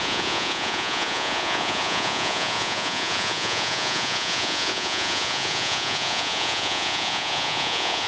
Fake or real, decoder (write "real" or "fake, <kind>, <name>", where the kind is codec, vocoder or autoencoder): fake, vocoder, Vocos